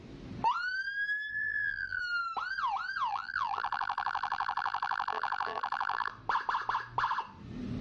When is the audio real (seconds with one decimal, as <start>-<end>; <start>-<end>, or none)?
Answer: 0.0-1.3; 2.0-3.1; 6.1-7.8